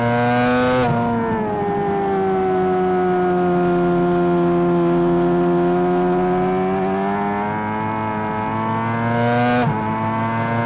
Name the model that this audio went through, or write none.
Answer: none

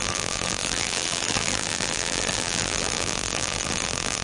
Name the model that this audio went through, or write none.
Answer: vocoder, BigVGAN v2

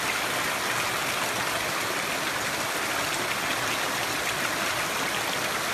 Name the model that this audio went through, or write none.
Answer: none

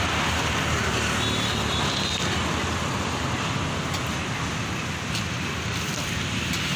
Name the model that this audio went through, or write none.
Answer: vocoder, BigVGAN v2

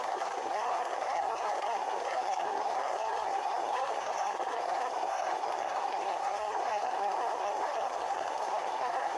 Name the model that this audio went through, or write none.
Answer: codec, SNAC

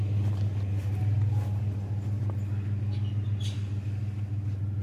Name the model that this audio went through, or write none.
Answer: none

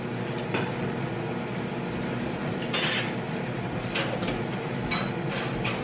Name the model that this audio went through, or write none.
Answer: none